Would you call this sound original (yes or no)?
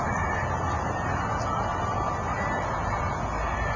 yes